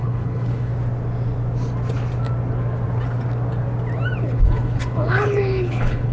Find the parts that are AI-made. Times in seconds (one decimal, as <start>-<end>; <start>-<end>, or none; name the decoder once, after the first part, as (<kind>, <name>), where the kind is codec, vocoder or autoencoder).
0.0-0.7 (codec, HILCodec); 4.2-6.1